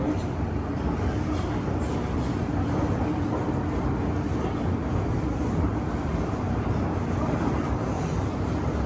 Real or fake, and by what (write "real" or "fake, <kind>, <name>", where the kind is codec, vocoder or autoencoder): fake, vocoder, BigVGAN v2